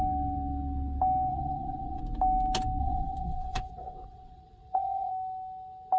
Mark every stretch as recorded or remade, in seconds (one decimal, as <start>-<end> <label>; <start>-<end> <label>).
0.0-1.3 recorded; 1.3-2.0 remade; 2.0-2.8 recorded; 2.8-5.1 remade; 5.1-6.0 recorded